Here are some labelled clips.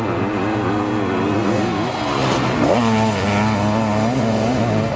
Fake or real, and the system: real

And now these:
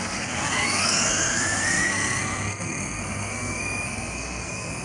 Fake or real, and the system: fake, codec, SNAC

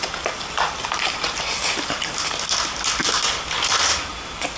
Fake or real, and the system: real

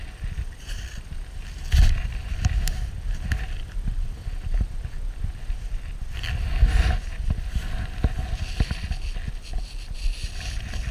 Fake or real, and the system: real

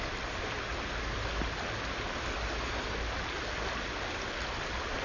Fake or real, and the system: real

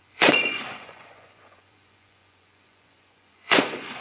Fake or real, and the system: fake, vocoder, Vocos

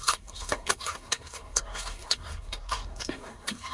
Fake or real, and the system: fake, codec, SNAC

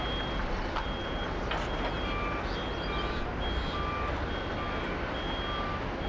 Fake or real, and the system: real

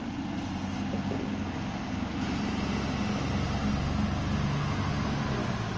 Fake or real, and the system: real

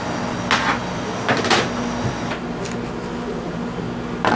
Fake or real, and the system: real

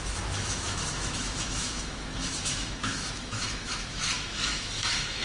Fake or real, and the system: fake, autoencoder, DAC-VAE